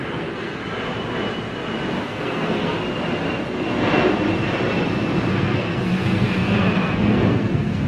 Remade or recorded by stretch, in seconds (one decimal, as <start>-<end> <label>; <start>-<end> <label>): 0.0-0.6 remade; 0.6-2.0 recorded; 2.0-2.7 remade; 2.7-5.3 recorded; 5.3-7.9 remade

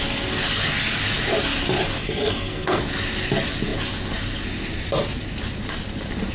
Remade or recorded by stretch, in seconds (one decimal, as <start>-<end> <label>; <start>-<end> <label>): 0.0-2.0 recorded; 2.0-2.8 remade; 2.8-6.3 recorded

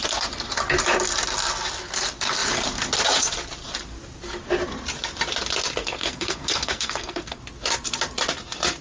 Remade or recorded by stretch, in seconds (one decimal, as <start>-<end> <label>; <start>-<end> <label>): 0.0-5.8 recorded; 5.8-7.4 remade; 7.4-8.8 recorded

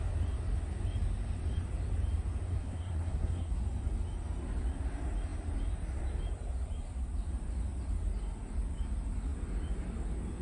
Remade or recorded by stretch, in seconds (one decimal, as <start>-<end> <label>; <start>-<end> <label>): 0.0-2.5 recorded; 2.5-3.6 remade; 3.6-10.4 recorded

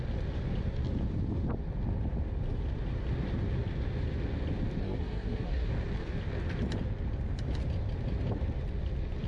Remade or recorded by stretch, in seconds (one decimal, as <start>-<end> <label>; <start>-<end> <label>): 0.0-4.8 recorded; 4.8-5.7 remade; 5.7-9.3 recorded

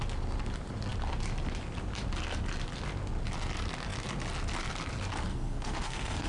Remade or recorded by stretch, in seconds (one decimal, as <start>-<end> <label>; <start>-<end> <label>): 0.0-5.3 recorded; 5.3-6.3 remade